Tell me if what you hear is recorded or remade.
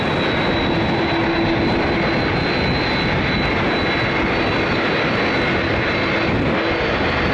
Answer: recorded